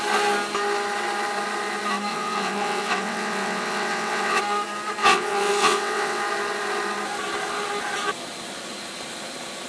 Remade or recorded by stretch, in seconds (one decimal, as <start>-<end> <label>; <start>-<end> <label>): 0.0-2.1 recorded; 2.1-4.4 remade; 4.4-5.0 recorded; 5.0-6.2 remade; 6.2-9.7 recorded